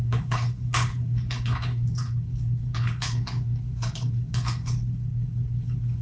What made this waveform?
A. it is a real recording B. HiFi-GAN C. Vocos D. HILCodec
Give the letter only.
D